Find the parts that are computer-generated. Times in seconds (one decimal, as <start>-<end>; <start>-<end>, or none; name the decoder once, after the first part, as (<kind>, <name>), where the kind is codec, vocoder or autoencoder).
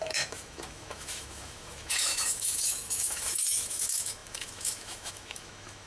0.0-5.9 (autoencoder, DAC-VAE)